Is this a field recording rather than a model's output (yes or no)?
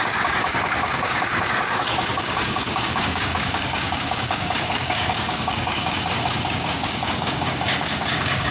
no